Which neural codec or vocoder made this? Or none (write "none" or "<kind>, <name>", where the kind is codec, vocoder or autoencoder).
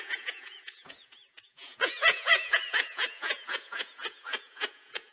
vocoder, Vocos